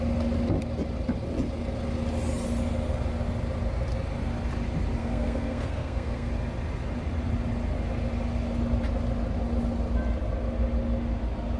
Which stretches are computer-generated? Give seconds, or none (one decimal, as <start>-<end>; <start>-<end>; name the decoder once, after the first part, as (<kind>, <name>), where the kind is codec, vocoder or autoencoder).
5.0-6.3 (codec, SNAC)